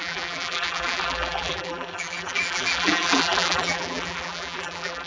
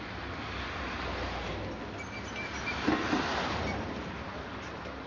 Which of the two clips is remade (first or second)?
first